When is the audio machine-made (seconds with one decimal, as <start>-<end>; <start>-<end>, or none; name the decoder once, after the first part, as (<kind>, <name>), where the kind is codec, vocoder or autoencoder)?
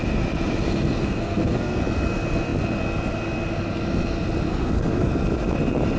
1.0-1.8 (codec, SNAC); 4.5-5.1